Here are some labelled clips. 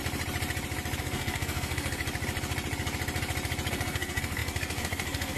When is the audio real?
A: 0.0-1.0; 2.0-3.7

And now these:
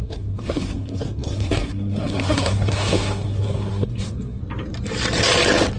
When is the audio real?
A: 4.4-5.8

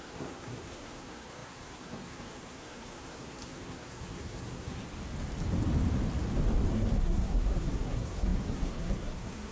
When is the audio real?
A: 4.8-6.7

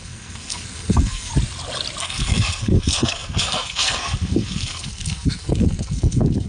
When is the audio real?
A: 1.3-2.0